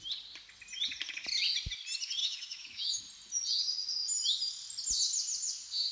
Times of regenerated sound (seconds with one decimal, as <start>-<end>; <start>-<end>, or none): 2.2-3.0